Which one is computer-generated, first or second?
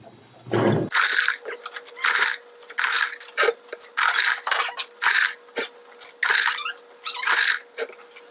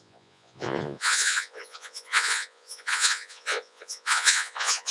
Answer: second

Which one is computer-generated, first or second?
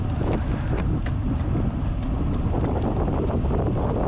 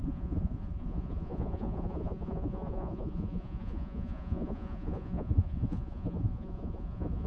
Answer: second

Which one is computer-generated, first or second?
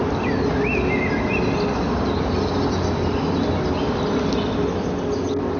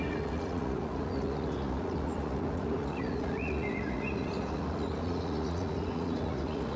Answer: second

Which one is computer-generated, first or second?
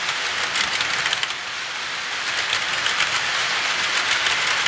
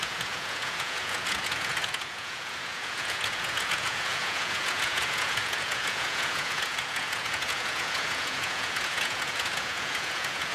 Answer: second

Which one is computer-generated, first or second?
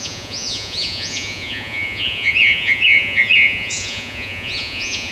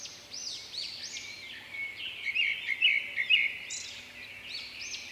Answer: first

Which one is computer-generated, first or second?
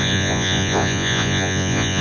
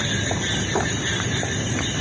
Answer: first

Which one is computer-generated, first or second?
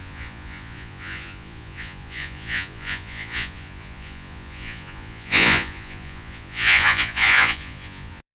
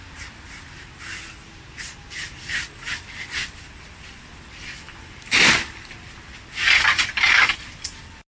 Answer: first